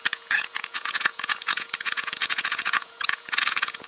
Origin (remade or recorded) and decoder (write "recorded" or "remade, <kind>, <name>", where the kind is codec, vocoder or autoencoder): remade, vocoder, Vocos